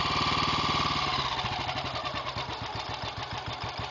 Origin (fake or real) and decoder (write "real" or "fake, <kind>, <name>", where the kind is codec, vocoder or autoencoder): real